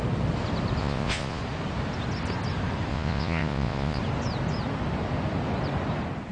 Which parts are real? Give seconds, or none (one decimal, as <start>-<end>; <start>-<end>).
0.0-0.8; 1.4-2.9; 4.0-6.3